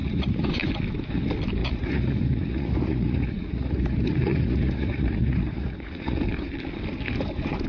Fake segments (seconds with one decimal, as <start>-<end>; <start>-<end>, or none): 0.0-0.5; 1.6-6.2